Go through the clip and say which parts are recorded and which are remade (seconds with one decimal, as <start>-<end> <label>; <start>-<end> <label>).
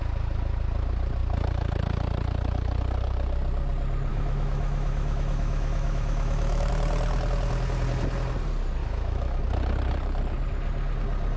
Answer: 0.0-4.1 recorded; 4.1-6.7 remade; 6.7-8.8 recorded; 8.8-9.4 remade; 9.4-11.4 recorded